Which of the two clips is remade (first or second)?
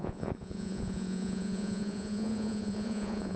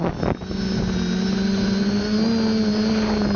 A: first